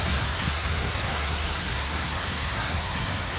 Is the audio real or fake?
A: fake